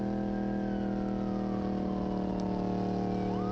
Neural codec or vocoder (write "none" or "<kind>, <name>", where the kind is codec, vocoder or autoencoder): none